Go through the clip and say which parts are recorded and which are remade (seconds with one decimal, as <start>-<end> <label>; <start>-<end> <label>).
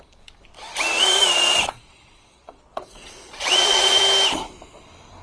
0.0-0.9 recorded; 0.9-4.0 remade; 4.0-5.2 recorded